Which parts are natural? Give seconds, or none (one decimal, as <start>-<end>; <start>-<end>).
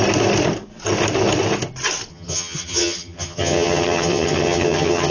0.0-2.1